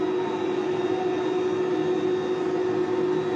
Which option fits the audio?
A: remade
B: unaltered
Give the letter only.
B